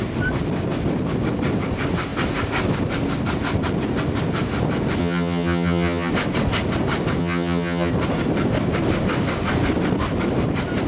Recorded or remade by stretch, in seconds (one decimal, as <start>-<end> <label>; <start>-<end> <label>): 0.0-5.0 recorded; 5.0-6.1 remade; 6.1-7.2 recorded; 7.2-7.9 remade; 7.9-10.9 recorded